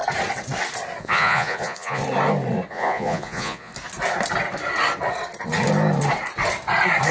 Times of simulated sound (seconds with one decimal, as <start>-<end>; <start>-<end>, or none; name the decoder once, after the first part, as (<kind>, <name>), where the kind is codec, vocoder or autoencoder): 1.0-2.0 (vocoder, Vocos); 2.7-3.7